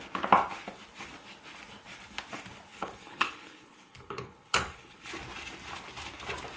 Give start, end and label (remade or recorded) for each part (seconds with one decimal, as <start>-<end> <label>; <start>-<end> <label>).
0.0-2.7 recorded; 2.7-5.1 remade; 5.1-6.6 recorded